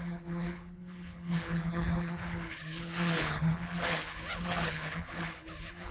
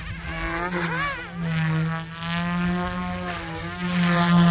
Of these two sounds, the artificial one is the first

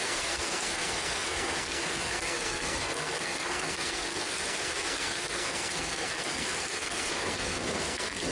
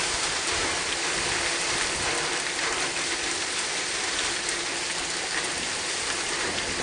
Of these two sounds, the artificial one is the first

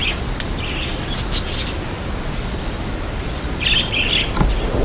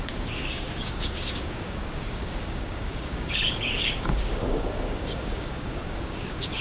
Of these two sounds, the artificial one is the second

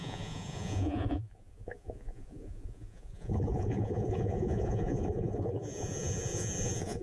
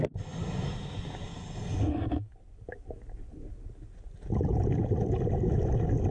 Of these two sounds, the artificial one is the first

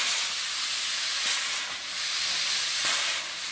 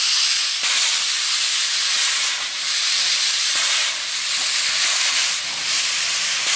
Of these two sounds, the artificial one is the second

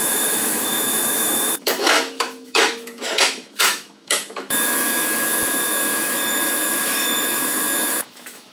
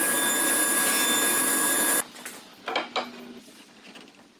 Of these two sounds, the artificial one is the first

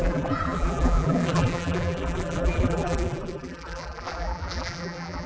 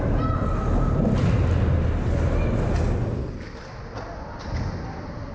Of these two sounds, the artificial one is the first